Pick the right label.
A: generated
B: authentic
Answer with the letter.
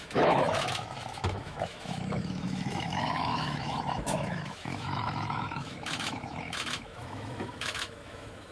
A